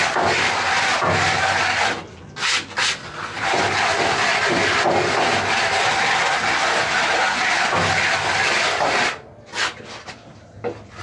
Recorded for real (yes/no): yes